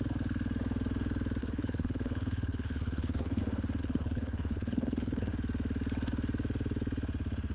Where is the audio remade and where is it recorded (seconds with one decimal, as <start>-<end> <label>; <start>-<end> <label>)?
0.0-1.4 recorded; 1.4-3.4 remade; 3.4-3.8 recorded; 3.8-5.3 remade; 5.3-7.5 recorded